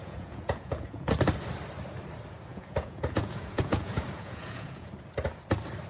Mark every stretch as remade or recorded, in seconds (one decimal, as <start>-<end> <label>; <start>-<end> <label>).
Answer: 0.0-1.1 remade; 1.1-2.5 recorded; 2.5-4.9 remade; 4.9-5.9 recorded